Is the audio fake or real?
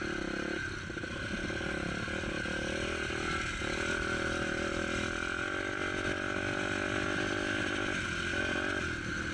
real